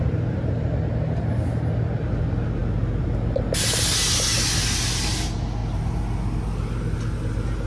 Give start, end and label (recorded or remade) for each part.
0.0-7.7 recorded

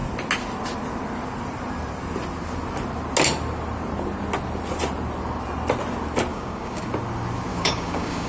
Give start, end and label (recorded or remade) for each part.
0.0-6.3 recorded; 6.3-6.8 remade; 6.8-7.5 recorded; 7.5-8.3 remade